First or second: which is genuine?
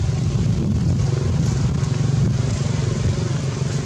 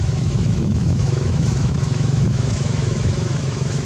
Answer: first